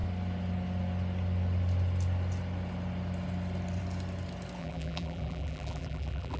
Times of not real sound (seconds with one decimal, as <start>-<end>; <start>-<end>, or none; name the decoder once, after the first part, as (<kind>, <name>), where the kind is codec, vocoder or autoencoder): 4.6-6.4 (vocoder, BigVGAN v2)